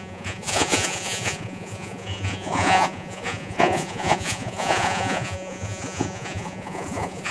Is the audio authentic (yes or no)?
no